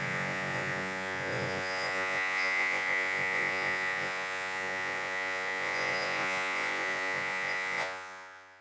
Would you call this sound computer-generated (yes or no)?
yes